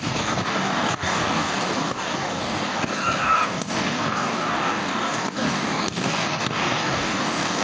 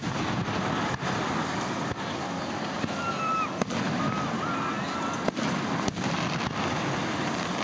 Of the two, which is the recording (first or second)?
second